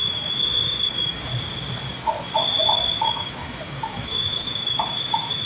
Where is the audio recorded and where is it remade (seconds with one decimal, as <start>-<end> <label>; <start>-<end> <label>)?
0.0-1.3 remade; 1.3-3.0 recorded; 3.0-5.5 remade